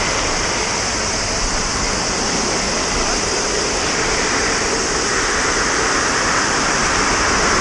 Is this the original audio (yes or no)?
no